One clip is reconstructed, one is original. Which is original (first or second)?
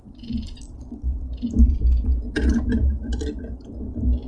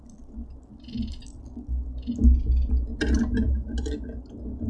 second